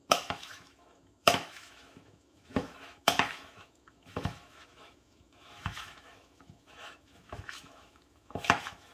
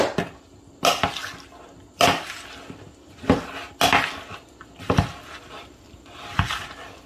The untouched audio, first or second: second